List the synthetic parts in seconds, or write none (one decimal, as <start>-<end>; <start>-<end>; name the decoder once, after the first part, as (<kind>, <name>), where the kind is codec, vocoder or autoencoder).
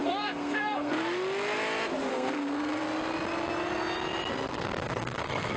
0.0-0.9 (codec, SNAC); 2.1-2.8; 4.5-5.6